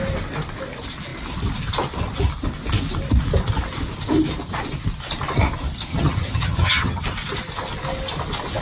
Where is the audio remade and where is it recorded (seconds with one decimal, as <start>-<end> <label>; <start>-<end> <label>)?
0.0-5.9 recorded; 5.9-7.0 remade; 7.0-8.6 recorded